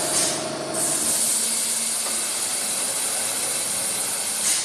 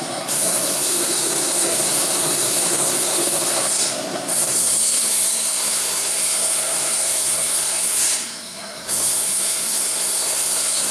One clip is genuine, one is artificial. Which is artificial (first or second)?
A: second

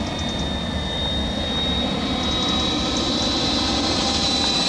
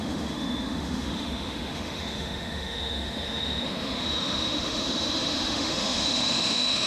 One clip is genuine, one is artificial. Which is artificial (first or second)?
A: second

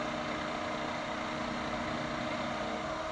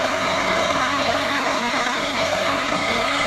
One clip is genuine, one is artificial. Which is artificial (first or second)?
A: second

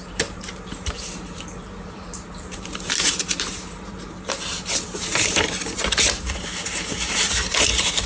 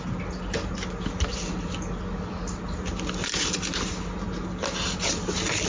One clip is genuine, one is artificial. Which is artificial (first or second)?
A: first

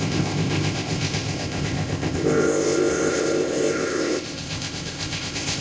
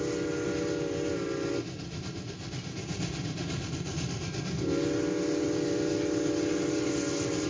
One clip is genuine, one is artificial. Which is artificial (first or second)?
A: first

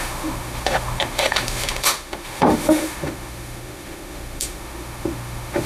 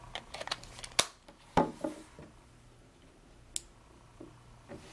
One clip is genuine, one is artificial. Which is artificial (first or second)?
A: first